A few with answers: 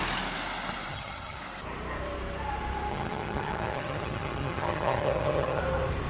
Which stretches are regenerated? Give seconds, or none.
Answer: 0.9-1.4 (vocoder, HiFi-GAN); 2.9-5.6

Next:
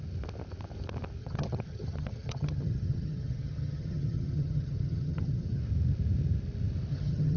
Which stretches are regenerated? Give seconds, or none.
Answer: 1.2-5.6 (vocoder, HiFi-GAN); 6.9-7.4

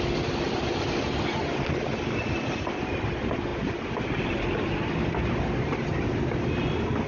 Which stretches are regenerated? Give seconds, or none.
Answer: none

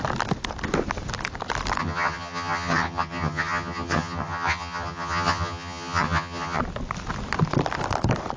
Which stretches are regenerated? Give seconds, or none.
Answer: 1.8-6.6 (vocoder, HiFi-GAN)

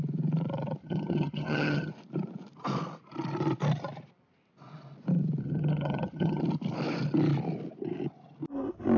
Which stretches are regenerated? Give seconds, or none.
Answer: 0.8-1.9 (vocoder, HiFi-GAN); 5.4-6.4

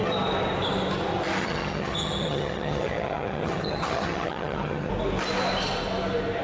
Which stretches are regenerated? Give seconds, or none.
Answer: 1.4-4.9 (vocoder, HiFi-GAN)